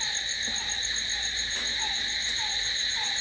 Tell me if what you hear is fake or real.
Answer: real